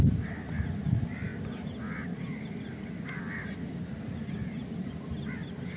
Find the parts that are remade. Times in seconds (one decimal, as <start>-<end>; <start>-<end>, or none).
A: none